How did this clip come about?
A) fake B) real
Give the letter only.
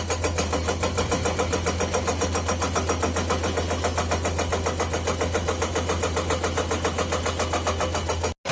B